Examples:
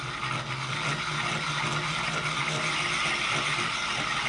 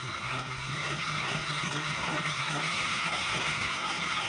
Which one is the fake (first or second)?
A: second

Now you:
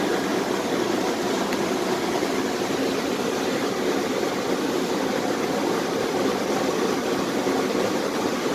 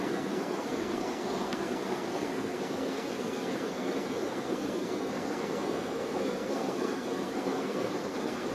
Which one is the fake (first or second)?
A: second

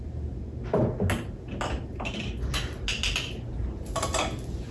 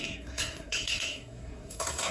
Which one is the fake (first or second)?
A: second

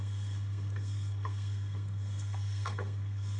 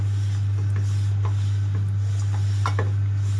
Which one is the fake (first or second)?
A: first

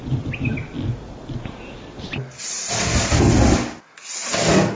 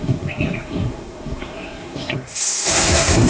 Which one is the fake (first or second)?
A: second